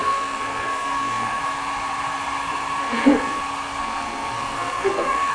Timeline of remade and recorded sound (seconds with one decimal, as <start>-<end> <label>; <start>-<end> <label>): 0.0-1.4 remade; 1.4-2.8 recorded; 2.8-3.4 remade; 3.4-3.8 recorded; 3.8-5.3 remade